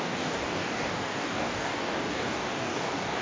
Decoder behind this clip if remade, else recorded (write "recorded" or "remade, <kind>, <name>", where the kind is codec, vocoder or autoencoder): remade, codec, DAC